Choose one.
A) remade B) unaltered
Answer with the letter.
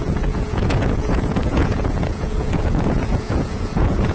A